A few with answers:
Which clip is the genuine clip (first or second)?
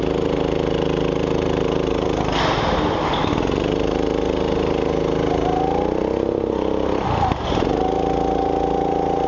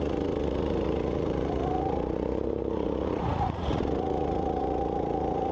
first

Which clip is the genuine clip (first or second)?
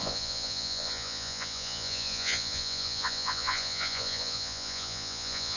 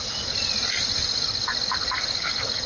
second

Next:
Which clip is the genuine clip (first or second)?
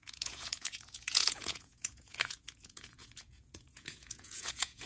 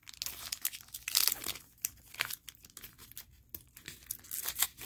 second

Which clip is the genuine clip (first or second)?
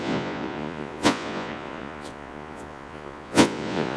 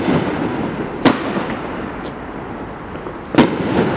second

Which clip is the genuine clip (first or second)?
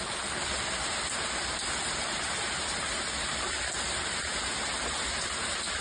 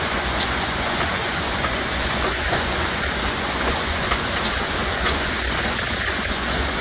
first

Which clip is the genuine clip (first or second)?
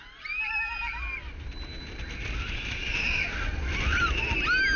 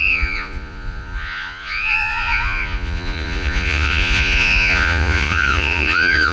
first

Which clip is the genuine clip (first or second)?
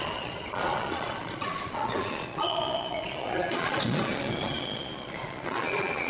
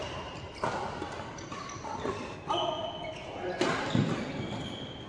second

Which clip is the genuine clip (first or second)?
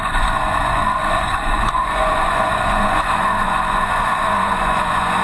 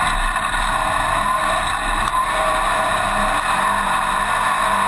second